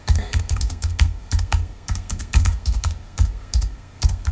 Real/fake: fake